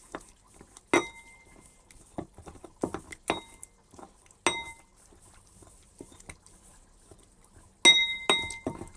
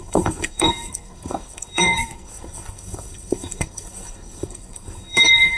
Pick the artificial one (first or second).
second